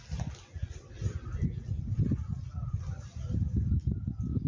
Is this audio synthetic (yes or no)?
no